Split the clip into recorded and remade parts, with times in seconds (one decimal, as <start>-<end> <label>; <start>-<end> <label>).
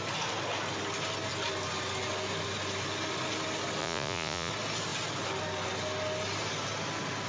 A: 0.0-3.8 recorded; 3.8-4.5 remade; 4.5-7.3 recorded